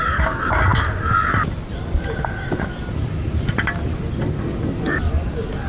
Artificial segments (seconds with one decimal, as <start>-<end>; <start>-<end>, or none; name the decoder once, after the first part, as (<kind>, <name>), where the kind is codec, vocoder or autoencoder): none